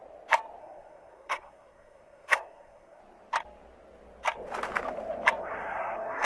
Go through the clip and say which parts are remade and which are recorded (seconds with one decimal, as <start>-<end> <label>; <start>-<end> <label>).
0.0-0.6 recorded; 0.6-3.0 remade; 3.0-5.4 recorded; 5.4-6.2 remade